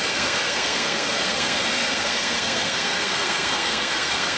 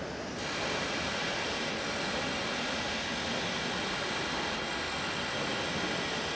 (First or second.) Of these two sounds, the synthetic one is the first